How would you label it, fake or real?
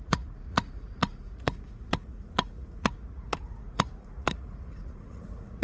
fake